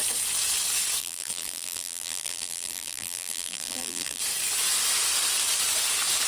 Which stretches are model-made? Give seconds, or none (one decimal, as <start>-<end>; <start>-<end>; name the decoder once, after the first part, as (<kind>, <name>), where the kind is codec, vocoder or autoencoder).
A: 1.0-4.2 (vocoder, BigVGAN v2)